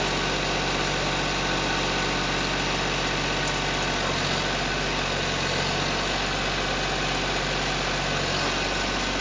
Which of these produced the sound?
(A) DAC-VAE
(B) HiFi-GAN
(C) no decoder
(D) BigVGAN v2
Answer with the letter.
C